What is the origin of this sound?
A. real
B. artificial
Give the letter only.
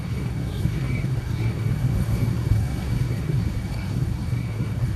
B